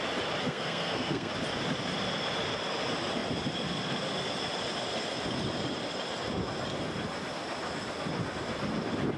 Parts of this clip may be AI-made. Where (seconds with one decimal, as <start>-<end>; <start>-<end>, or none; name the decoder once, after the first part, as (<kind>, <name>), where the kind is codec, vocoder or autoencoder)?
0.4-1.3 (codec, SNAC)